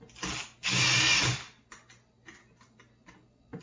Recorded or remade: recorded